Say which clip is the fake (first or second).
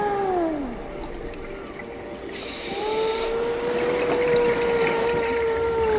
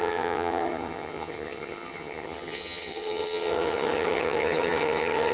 second